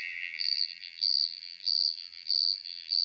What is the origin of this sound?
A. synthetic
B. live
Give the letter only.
A